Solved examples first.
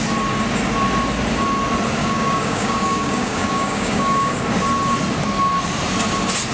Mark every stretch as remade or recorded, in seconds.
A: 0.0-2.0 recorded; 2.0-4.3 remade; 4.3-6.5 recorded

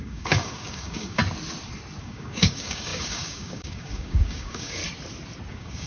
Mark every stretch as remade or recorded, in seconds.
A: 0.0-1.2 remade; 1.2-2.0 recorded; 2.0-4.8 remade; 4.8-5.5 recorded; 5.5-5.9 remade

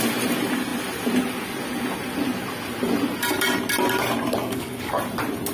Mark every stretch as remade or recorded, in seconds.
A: 0.0-4.4 recorded; 4.4-4.9 remade; 4.9-5.5 recorded

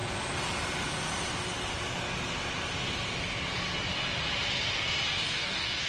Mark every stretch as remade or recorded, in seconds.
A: 0.0-5.1 recorded; 5.1-5.9 remade

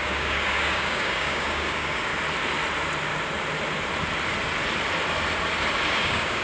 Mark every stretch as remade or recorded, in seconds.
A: 0.0-2.1 remade; 2.1-5.9 recorded; 5.9-6.4 remade